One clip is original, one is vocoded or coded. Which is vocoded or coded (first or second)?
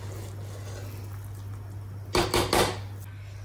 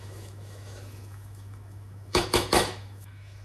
second